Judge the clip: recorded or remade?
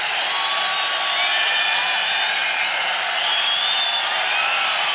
recorded